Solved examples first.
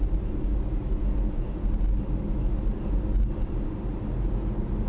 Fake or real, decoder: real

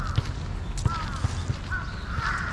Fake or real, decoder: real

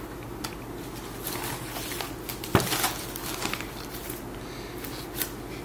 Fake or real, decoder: real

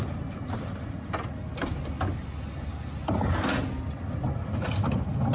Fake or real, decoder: real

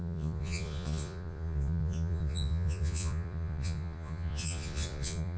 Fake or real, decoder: fake, vocoder, Vocos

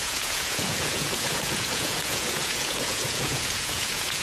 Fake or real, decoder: fake, vocoder, Vocos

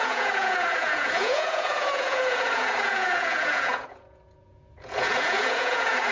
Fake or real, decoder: fake, vocoder, Vocos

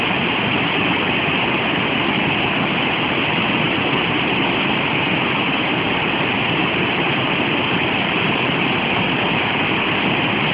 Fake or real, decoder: real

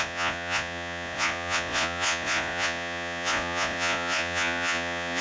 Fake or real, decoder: fake, vocoder, Vocos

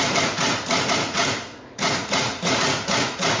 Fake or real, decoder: fake, vocoder, Vocos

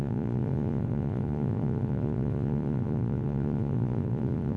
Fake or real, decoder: fake, vocoder, Vocos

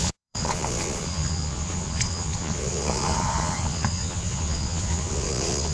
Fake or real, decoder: fake, vocoder, Vocos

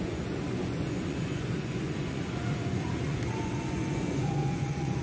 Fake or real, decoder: fake, vocoder, Vocos